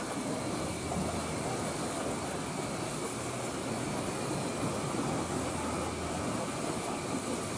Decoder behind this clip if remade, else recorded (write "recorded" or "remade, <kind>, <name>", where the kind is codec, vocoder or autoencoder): recorded